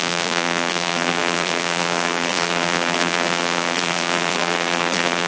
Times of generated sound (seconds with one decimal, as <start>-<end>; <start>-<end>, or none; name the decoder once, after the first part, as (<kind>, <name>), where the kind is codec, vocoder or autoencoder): 0.0-5.3 (vocoder, BigVGAN v2)